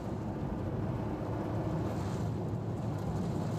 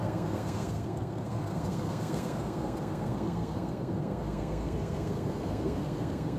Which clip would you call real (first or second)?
first